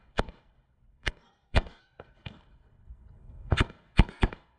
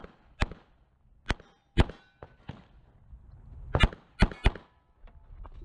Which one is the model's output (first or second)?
first